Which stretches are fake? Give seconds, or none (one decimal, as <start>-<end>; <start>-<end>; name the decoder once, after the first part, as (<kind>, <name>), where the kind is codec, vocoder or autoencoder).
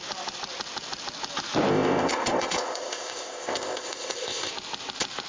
1.7-4.5 (codec, ZipCodec)